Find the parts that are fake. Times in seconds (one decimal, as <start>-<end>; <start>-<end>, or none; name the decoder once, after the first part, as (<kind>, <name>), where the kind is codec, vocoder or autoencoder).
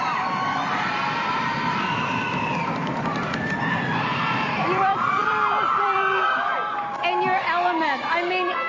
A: 0.0-6.5 (vocoder, BigVGAN v2)